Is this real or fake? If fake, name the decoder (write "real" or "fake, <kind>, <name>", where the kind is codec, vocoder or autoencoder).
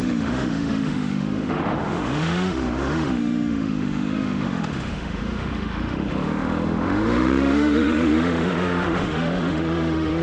fake, autoencoder, DAC-VAE